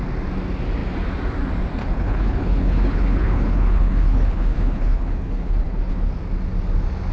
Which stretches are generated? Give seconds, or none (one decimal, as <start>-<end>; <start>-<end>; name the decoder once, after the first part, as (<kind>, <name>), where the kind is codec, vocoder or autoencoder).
1.8-6.1 (codec, HILCodec)